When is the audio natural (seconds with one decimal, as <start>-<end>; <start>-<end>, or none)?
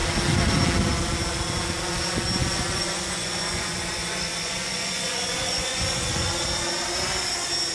0.0-2.4; 6.3-7.7